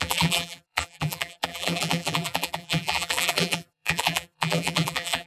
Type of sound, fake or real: fake